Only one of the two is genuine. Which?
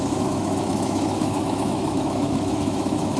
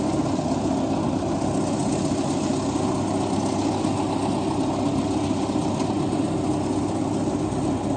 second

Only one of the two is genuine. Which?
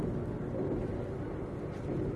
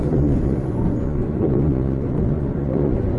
first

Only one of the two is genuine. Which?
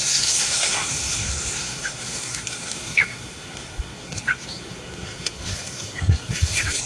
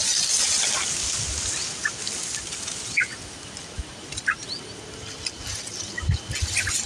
second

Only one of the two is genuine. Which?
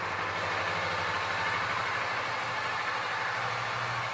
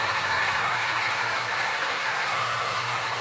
first